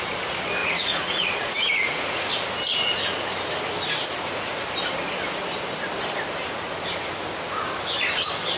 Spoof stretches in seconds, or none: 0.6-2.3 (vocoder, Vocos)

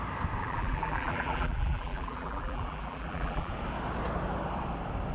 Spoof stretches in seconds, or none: 0.4-3.5 (vocoder, BigVGAN v2)

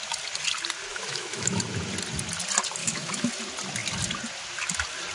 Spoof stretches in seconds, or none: 0.9-1.6 (autoencoder, DAC-VAE); 2.8-3.3